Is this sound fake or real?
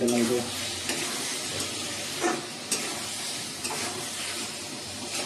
fake